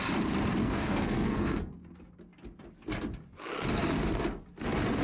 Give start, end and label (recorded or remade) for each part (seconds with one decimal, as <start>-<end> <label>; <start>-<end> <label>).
0.0-0.6 recorded; 0.6-1.7 remade; 1.7-5.0 recorded